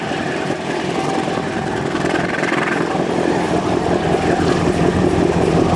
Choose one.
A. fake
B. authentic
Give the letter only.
A